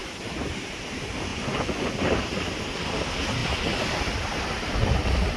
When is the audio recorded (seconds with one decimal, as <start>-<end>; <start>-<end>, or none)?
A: 0.0-1.3; 1.9-5.4